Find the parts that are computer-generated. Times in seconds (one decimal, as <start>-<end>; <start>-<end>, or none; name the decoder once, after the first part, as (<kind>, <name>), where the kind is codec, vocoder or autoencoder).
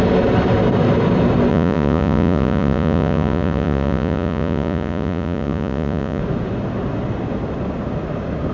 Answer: 1.5-6.2 (vocoder, Vocos)